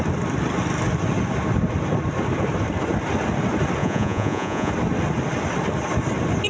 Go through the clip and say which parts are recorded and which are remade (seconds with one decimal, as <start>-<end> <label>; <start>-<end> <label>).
0.0-3.8 recorded; 3.8-4.7 remade; 4.7-6.5 recorded